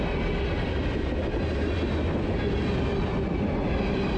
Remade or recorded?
recorded